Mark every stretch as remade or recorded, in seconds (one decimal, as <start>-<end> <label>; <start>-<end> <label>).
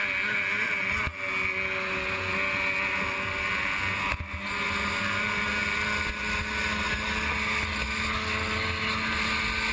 0.0-9.7 recorded